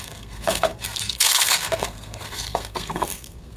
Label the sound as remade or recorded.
remade